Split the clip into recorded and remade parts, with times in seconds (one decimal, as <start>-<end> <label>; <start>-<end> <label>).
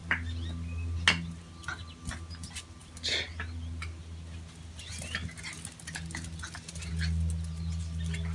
0.0-8.3 recorded